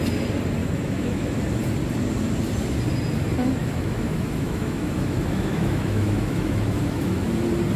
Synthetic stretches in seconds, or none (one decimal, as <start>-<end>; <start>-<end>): 0.6-1.4; 3.6-7.3